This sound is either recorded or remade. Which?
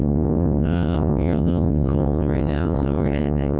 remade